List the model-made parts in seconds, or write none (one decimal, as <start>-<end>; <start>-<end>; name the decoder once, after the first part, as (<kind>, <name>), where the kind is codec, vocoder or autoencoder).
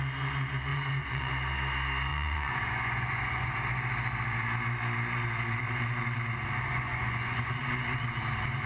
0.7-1.3 (vocoder, Vocos); 2.1-3.5; 6.7-7.6